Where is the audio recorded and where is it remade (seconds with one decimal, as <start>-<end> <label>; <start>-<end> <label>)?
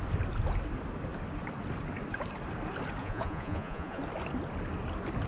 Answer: 0.0-3.0 recorded; 3.0-4.0 remade; 4.0-5.3 recorded